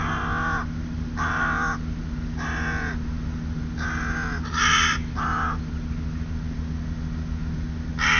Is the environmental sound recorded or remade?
recorded